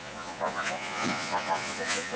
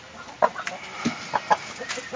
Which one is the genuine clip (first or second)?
second